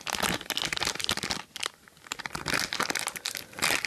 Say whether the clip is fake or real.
real